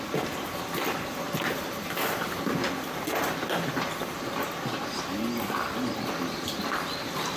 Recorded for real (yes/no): yes